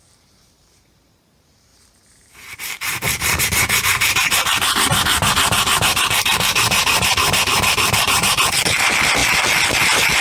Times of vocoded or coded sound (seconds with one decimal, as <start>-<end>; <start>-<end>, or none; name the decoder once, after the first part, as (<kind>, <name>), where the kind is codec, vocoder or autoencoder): 0.0-9.2 (vocoder, BigVGAN v2); 9.7-10.2